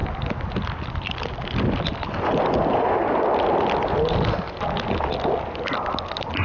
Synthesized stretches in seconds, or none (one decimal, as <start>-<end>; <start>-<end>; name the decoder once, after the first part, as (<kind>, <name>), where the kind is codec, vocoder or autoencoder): none